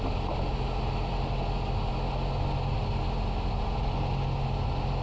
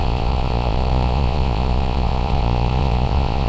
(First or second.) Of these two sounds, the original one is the first